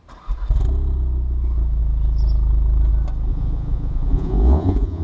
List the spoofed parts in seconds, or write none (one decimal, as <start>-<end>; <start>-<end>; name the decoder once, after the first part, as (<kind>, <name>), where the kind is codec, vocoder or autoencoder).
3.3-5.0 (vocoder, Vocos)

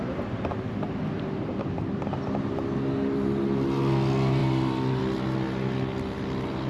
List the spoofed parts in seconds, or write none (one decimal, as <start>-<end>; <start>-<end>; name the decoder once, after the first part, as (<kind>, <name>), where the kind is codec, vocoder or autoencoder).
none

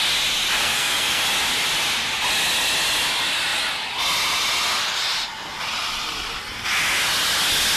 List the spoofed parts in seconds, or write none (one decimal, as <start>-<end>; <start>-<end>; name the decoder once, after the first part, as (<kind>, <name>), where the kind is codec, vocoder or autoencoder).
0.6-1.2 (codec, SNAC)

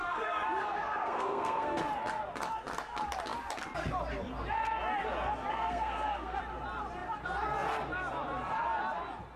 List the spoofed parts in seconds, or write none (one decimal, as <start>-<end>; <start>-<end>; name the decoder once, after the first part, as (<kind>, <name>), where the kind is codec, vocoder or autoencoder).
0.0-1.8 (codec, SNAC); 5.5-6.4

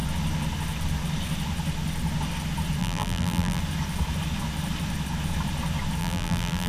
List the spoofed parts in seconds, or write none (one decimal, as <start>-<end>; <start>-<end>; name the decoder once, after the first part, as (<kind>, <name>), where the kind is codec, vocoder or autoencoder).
2.8-3.6 (vocoder, BigVGAN v2); 6.0-6.7